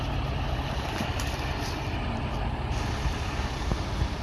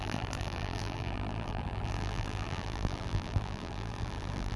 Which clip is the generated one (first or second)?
second